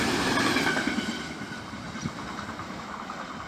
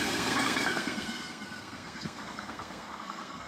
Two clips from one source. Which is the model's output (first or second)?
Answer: second